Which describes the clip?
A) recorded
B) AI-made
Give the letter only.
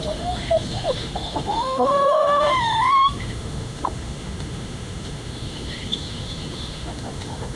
B